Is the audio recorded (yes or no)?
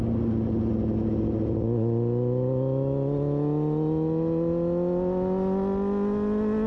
yes